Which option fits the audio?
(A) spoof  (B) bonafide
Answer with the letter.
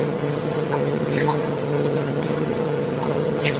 A